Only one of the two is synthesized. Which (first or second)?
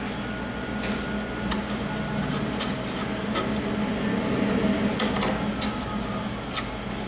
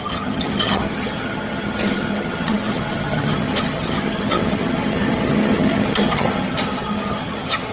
second